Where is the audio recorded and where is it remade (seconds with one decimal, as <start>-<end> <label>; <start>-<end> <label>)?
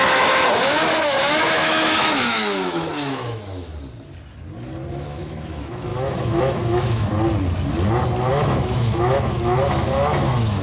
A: 0.0-3.7 remade; 3.7-4.9 recorded; 4.9-7.1 remade; 7.1-8.3 recorded; 8.3-10.6 remade